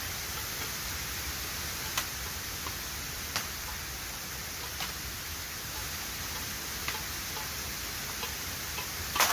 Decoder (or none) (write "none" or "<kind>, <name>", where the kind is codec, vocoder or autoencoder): none